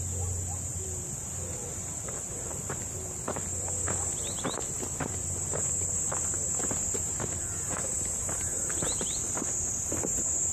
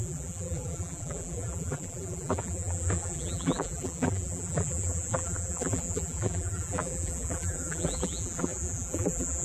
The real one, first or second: first